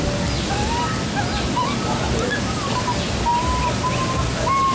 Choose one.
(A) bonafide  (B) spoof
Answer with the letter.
A